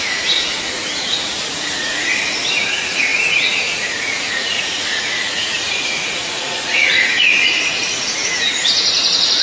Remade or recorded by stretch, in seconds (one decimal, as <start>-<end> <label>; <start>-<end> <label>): 0.0-2.1 remade; 2.1-2.7 recorded; 2.7-9.4 remade